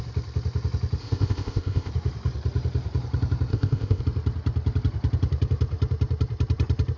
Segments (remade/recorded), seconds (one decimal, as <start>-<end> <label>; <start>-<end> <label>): 0.0-1.0 recorded; 1.0-1.9 remade; 1.9-3.5 recorded; 3.5-4.0 remade; 4.0-7.0 recorded